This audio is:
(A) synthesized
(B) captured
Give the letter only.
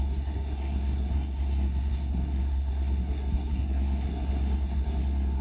A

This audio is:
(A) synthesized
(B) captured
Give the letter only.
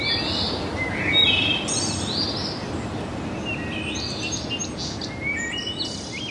B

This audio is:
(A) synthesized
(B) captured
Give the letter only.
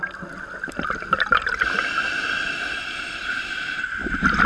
B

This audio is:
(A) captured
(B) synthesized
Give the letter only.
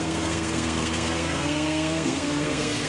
B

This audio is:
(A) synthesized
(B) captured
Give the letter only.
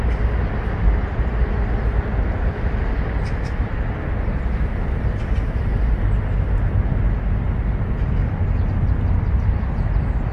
B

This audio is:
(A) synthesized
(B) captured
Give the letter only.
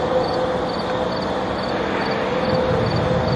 B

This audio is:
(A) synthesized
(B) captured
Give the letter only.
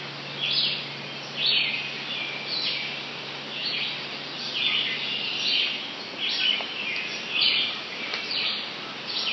B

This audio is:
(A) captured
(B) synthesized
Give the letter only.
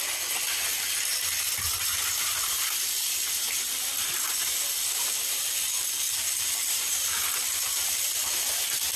A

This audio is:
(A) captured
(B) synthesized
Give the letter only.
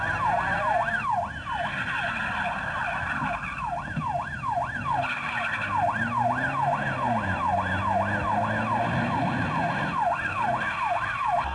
A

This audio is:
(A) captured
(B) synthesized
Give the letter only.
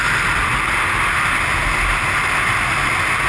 A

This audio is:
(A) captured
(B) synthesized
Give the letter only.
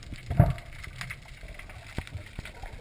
A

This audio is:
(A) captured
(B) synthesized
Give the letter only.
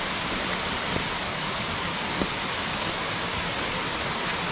A